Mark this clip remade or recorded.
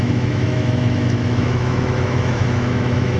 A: remade